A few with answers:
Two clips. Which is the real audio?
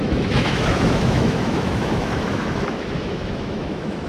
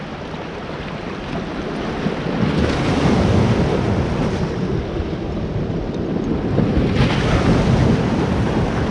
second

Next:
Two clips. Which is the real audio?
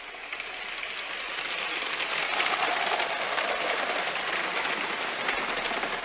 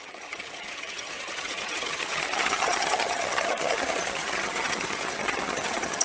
first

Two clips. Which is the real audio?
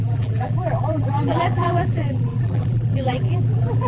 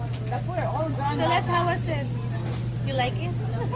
second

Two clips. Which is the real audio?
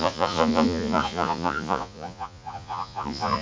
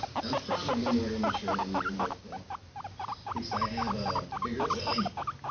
second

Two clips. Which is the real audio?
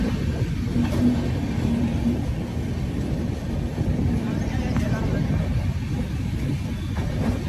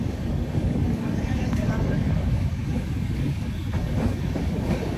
first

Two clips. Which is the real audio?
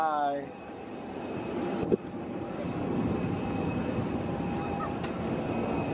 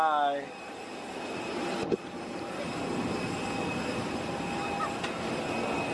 second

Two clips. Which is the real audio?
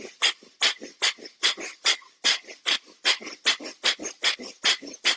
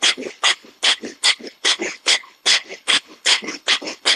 first